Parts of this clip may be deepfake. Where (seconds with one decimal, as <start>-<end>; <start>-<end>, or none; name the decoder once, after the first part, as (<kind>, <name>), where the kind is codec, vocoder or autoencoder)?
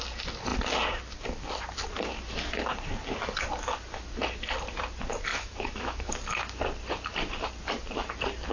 5.3-6.1 (autoencoder, DAC-VAE)